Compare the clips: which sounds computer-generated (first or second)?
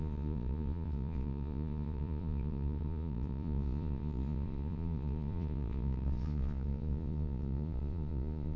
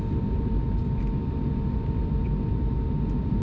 first